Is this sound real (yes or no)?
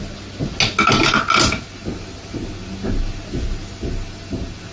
yes